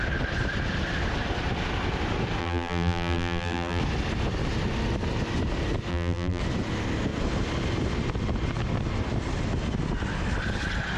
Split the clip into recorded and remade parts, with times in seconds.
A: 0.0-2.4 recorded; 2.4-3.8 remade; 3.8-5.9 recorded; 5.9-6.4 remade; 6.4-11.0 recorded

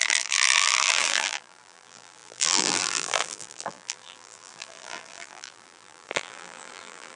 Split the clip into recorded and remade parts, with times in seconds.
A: 0.0-7.2 remade